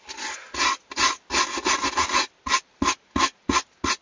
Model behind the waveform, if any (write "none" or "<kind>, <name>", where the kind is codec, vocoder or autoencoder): none